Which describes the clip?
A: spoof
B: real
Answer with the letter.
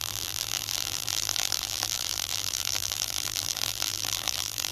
A